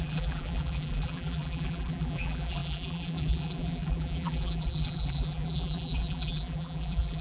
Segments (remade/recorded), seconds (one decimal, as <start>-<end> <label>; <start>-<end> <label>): 0.0-7.2 remade